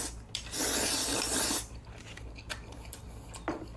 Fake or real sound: real